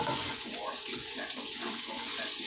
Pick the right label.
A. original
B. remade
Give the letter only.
B